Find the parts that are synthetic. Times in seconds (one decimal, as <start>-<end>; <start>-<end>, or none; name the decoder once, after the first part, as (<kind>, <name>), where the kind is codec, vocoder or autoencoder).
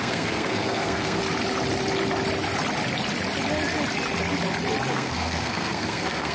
0.0-1.2 (codec, SNAC); 4.9-6.3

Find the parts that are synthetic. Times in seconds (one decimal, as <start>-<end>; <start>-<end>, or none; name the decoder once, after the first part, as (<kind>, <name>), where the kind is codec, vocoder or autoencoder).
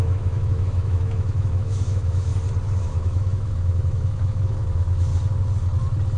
0.0-2.3 (autoencoder, DAC-VAE); 2.8-5.1